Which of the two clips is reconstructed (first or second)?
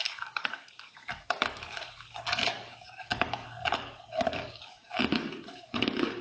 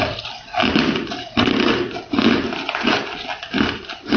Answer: first